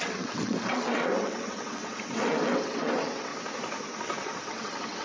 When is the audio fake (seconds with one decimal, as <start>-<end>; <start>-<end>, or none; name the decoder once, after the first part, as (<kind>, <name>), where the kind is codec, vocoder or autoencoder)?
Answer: 0.0-3.3 (vocoder, WaveNeXt); 4.4-5.0